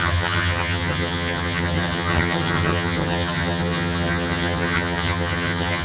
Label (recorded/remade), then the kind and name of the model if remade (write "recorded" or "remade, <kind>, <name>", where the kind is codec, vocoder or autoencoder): remade, vocoder, HiFi-GAN